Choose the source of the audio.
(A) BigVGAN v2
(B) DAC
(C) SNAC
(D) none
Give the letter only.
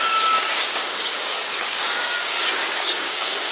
B